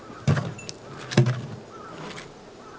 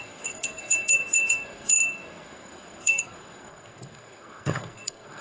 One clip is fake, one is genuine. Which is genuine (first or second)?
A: first